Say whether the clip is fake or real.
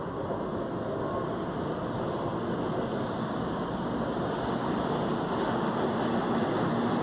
real